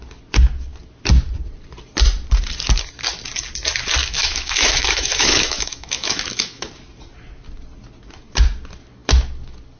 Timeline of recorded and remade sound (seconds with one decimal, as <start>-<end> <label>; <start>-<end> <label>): 0.0-4.0 recorded; 4.0-6.7 remade; 6.7-9.8 recorded